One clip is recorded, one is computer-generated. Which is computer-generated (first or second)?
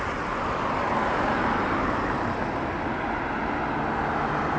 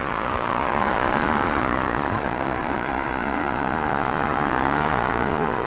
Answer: second